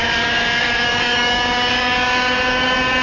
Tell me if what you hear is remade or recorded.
remade